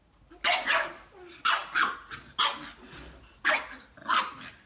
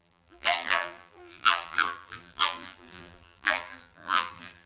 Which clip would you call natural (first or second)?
first